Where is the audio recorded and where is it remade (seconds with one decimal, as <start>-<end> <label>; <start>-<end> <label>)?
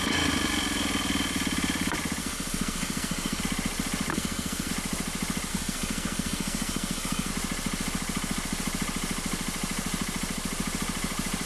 0.0-2.2 recorded; 2.2-3.4 remade; 3.4-4.1 recorded; 4.1-4.7 remade; 4.7-5.5 recorded; 5.5-7.3 remade; 7.3-11.5 recorded